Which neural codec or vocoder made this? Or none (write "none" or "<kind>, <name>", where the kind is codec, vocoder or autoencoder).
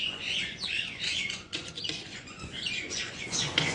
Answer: vocoder, Vocos